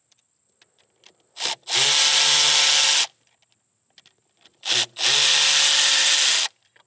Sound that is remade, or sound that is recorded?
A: recorded